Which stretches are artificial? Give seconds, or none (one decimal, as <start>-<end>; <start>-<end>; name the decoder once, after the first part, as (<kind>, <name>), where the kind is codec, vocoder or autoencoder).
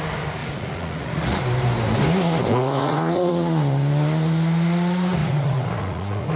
0.4-1.4 (vocoder, Vocos); 2.5-3.3; 5.2-6.4